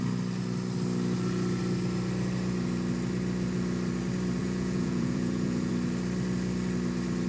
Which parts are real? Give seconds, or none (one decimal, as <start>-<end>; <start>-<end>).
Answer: 0.0-4.4; 5.7-7.3